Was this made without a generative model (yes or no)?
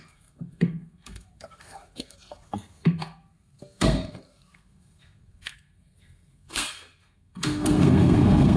no